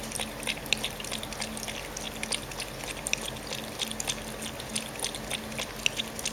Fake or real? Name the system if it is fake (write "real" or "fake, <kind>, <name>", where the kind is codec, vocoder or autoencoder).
real